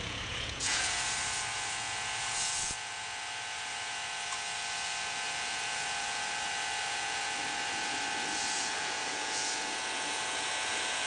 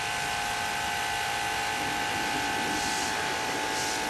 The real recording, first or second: second